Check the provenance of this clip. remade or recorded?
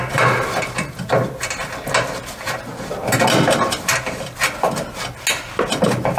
recorded